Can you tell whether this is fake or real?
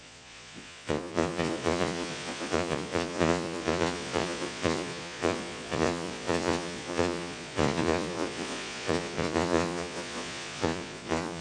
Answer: fake